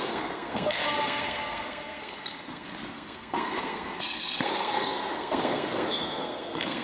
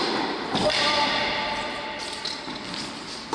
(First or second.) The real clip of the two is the second